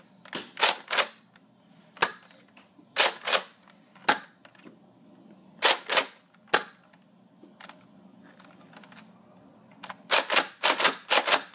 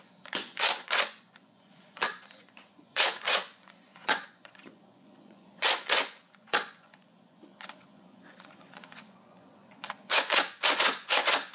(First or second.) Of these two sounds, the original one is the first